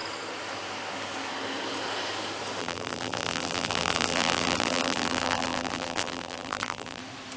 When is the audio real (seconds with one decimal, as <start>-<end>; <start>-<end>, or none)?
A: 0.0-2.6; 7.0-7.4